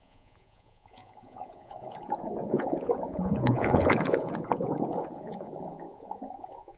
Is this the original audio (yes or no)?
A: no